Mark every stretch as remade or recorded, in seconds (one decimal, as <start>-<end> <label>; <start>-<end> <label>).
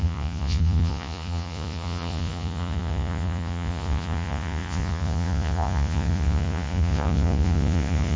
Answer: 0.0-8.2 remade